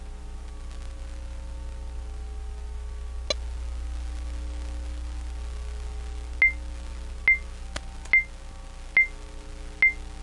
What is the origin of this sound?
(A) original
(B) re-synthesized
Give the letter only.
A